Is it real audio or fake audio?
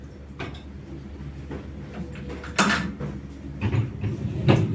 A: real